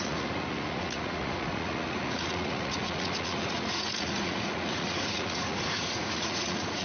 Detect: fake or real fake